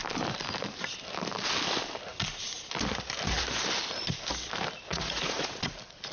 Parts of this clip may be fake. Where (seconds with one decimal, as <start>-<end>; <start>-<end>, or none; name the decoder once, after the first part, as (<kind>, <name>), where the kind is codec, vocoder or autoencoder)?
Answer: 4.9-5.6 (vocoder, Vocos)